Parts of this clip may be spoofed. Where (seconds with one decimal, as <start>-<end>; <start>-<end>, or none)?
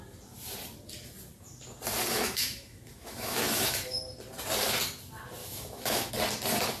2.1-4.0; 5.4-6.1